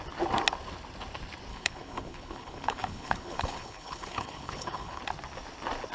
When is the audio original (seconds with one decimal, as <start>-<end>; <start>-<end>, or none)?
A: 0.0-1.5; 5.0-5.9